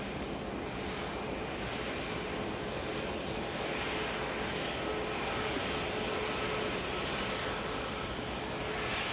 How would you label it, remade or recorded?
recorded